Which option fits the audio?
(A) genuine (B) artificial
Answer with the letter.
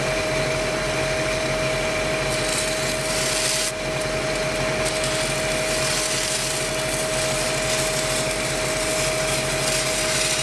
A